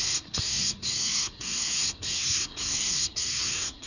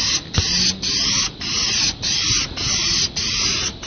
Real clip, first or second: second